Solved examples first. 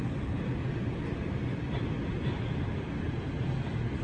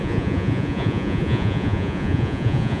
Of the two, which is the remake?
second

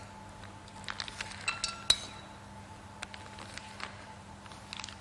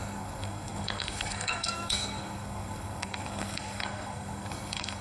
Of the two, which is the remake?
second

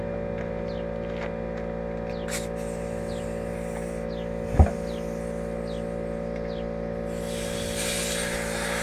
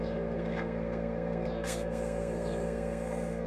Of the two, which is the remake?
second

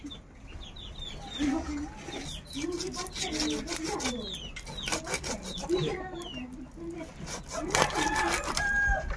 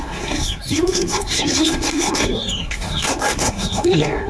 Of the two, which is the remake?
second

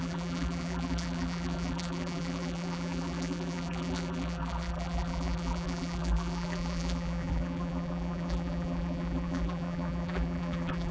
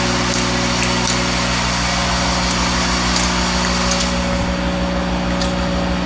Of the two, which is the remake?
first